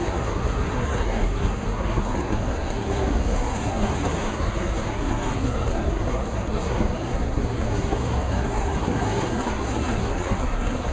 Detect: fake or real fake